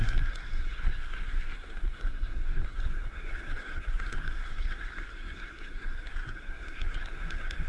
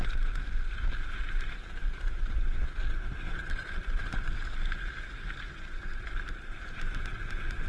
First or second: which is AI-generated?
first